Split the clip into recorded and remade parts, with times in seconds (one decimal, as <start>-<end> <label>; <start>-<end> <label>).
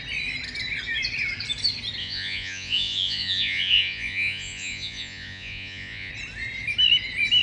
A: 0.0-2.0 recorded; 2.0-6.1 remade; 6.1-7.4 recorded